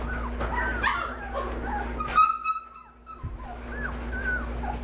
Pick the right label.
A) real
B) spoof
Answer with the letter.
A